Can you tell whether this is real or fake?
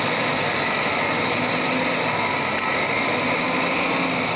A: real